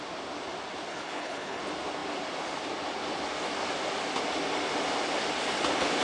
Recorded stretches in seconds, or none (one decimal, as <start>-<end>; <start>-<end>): 0.0-0.9; 1.6-6.0